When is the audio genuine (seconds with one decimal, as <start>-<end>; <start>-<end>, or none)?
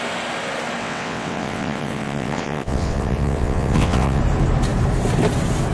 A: 0.0-0.8; 4.2-5.7